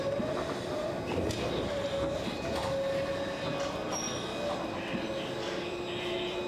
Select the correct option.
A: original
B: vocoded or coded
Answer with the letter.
A